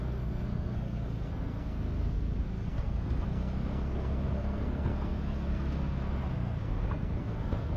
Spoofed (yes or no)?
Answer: yes